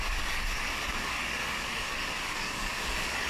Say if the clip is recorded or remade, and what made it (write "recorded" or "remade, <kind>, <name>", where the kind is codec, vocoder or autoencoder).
remade, codec, DAC